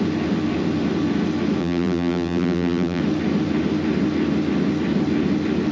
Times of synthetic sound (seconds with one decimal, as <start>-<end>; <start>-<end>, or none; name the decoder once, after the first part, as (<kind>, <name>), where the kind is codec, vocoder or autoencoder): 1.6-3.0 (vocoder, BigVGAN v2)